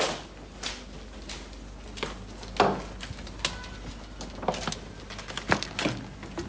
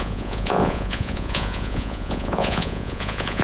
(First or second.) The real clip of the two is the first